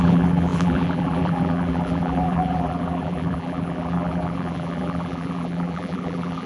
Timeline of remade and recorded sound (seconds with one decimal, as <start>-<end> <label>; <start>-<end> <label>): 0.0-6.5 remade